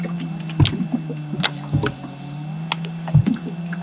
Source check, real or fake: real